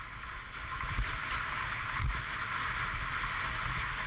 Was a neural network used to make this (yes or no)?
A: no